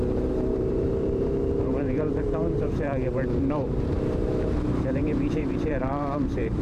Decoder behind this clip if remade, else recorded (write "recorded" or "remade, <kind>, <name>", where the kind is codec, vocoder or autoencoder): remade, vocoder, BigVGAN v2